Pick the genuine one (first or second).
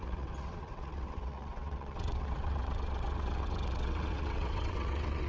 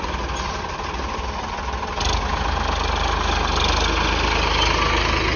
second